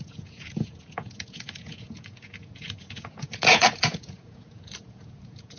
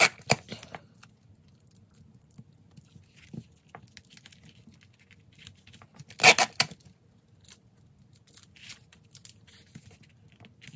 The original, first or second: second